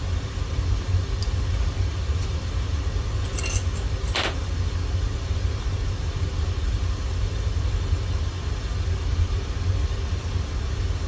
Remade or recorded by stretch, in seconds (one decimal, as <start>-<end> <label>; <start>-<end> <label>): 0.0-11.1 recorded